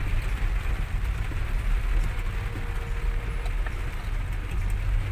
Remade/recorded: recorded